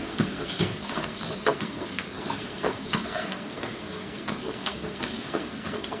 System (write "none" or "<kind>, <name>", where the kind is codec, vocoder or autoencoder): codec, SNAC